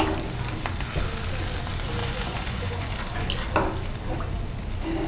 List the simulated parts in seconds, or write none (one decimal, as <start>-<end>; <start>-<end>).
2.0-2.9